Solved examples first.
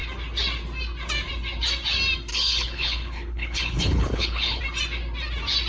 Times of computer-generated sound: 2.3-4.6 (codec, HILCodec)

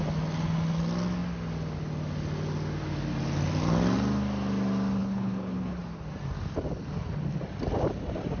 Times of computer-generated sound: 5.0-5.8 (codec, HILCodec)

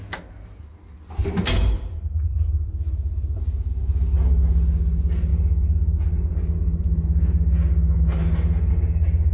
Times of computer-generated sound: none

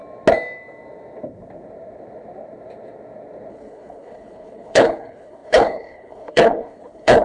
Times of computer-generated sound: 3.5-7.2 (codec, HILCodec)

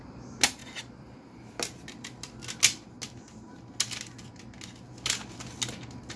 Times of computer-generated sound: none

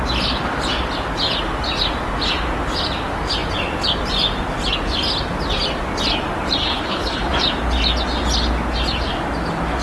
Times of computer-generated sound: 6.6-7.3 (codec, HILCodec)